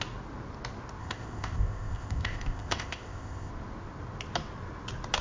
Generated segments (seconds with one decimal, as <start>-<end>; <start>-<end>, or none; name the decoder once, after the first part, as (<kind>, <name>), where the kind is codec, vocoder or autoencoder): 1.0-3.5 (codec, ZipCodec)